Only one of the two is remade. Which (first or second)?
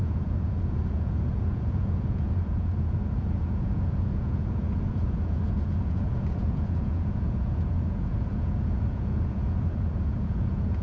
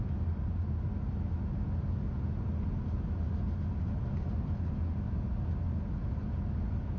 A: first